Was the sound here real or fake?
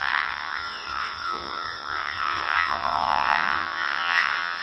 fake